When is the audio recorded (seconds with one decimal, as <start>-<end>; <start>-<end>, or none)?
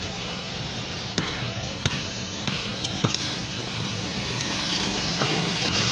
0.5-1.1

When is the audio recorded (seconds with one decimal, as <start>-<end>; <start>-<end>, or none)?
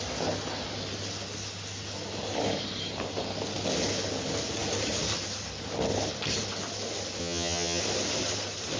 0.0-7.2; 7.8-8.8